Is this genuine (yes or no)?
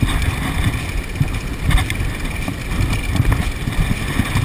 yes